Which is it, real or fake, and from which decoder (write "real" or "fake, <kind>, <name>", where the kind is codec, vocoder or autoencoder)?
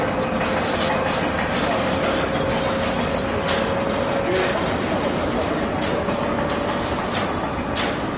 real